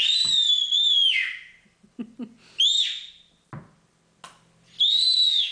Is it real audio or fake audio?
real